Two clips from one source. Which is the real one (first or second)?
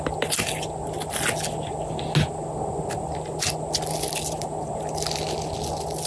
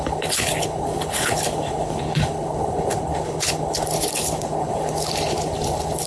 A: first